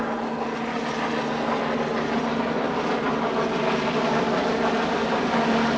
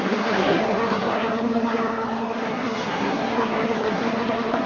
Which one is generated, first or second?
second